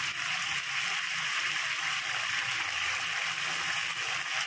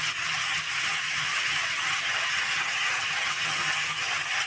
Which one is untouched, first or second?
first